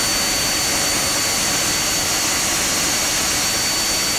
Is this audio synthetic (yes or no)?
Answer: no